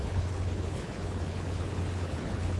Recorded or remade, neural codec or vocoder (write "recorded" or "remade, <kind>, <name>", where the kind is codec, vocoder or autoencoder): remade, codec, HILCodec